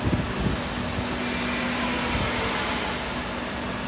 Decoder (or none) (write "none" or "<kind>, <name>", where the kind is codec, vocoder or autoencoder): none